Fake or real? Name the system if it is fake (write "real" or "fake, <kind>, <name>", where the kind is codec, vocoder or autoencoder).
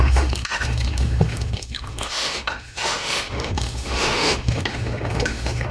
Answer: fake, autoencoder, DAC-VAE